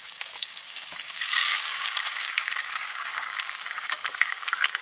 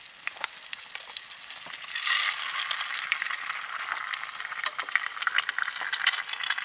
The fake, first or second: first